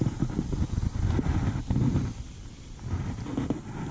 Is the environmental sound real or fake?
real